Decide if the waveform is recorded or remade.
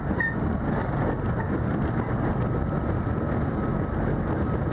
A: recorded